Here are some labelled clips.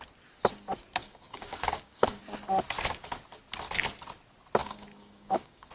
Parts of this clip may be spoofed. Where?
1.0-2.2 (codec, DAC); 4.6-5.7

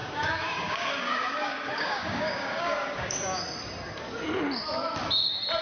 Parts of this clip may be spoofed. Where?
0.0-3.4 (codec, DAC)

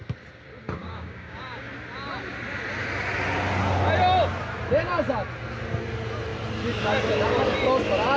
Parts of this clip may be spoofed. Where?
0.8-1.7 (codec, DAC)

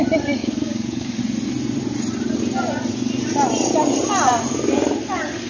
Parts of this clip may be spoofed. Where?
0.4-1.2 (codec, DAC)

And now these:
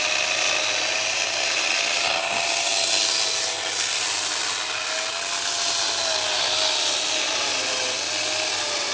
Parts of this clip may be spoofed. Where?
none

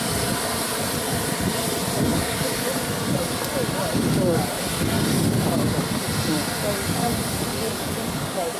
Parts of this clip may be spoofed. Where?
2.1-2.7 (codec, DAC); 7.5-8.6

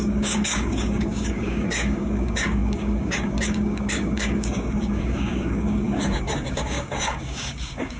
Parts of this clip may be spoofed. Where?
0.0-8.0 (codec, DAC)

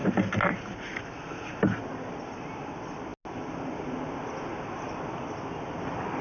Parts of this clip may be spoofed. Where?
none